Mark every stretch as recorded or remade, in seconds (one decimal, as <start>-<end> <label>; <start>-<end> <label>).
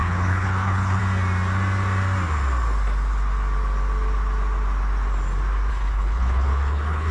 0.0-1.0 remade; 1.0-5.7 recorded; 5.7-7.1 remade